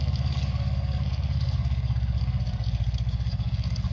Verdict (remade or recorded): remade